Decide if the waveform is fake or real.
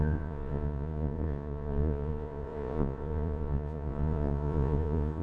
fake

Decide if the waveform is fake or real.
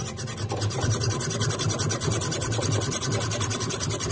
real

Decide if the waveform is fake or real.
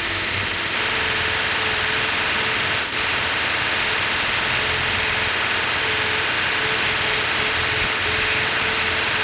real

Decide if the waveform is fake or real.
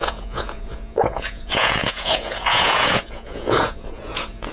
fake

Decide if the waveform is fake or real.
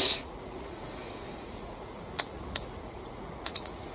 fake